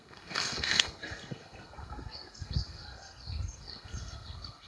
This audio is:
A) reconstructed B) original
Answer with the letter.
A